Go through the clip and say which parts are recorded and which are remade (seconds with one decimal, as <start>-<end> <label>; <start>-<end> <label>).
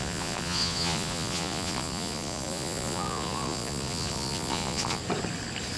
0.0-5.0 remade; 5.0-5.8 recorded